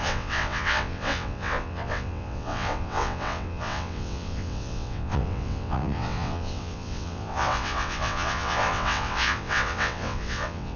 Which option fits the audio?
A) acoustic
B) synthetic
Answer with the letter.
B